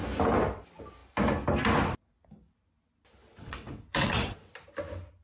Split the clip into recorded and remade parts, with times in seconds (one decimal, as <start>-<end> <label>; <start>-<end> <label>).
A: 0.0-3.2 recorded; 3.2-4.5 remade; 4.5-5.2 recorded